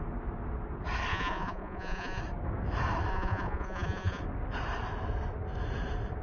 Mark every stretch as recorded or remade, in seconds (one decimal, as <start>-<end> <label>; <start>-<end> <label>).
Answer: 0.0-1.1 recorded; 1.1-2.2 remade; 2.2-3.1 recorded; 3.1-4.2 remade; 4.2-6.2 recorded